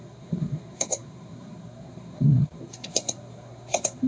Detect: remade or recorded remade